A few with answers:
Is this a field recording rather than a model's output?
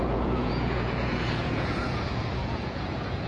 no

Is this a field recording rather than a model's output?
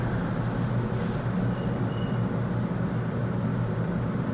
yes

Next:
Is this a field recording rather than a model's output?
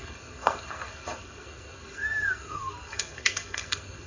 no